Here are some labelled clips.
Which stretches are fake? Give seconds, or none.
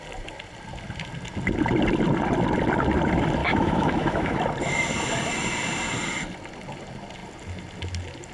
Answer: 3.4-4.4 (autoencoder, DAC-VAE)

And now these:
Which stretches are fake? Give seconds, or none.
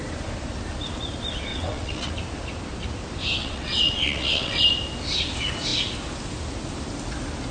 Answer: 1.5-2.1 (vocoder, WaveNeXt); 3.4-4.6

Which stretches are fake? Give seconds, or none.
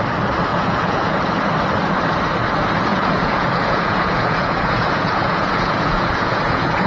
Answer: 0.5-1.2 (vocoder, Vocos); 2.9-6.9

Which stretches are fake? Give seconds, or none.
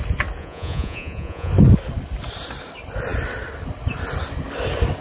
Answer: 0.4-1.5 (vocoder, Vocos)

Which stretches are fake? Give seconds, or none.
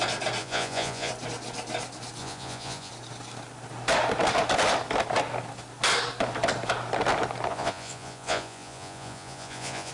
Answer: 0.4-1.1 (vocoder, Vocos); 2.2-2.9; 7.5-9.9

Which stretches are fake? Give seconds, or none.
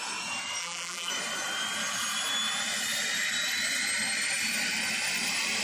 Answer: 0.6-1.1 (vocoder, BigVGAN v2)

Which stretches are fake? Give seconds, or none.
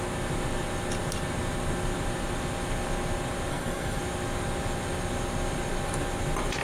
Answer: 3.5-4.0 (codec, SNAC)